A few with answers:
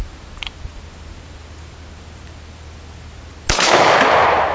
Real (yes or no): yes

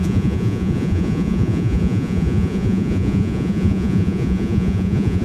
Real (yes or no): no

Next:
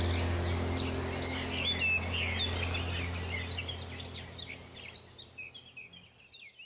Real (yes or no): yes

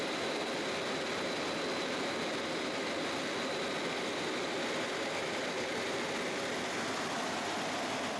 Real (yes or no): yes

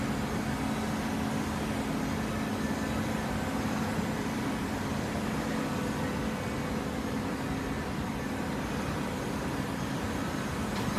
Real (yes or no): yes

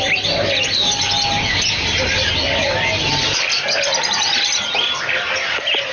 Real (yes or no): yes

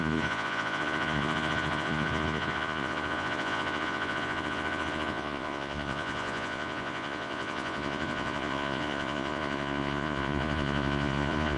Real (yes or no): no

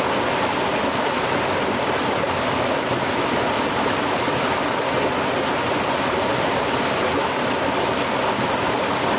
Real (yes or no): yes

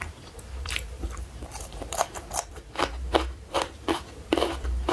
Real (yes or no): no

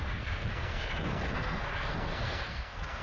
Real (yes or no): no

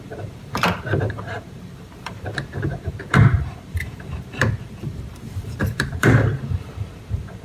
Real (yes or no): no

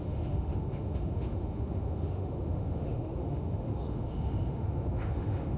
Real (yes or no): no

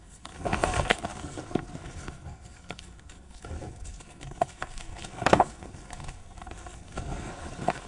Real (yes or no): no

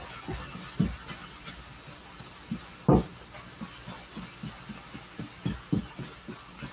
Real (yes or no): yes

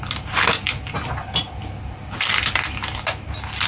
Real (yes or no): yes